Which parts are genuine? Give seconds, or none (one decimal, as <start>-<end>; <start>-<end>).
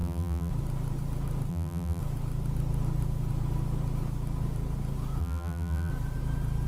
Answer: 0.5-1.5; 2.0-5.2; 5.9-6.7